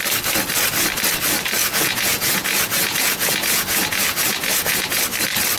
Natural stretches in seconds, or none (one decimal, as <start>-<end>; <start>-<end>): 0.0-1.6; 5.0-5.6